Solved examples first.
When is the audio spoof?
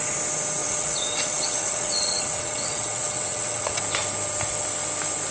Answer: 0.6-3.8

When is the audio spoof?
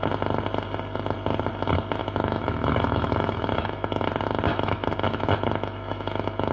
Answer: 2.0-4.1; 4.5-6.5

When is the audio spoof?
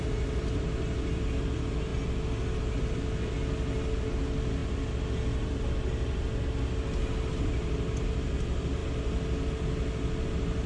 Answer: none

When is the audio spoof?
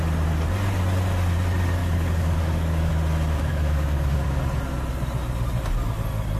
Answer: 1.8-2.9; 3.5-4.4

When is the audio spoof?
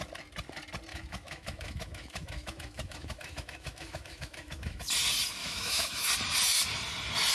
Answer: 0.9-4.9; 5.4-6.1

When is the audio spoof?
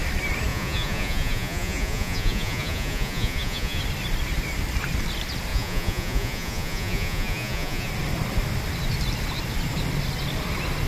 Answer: 0.5-3.8; 5.5-7.9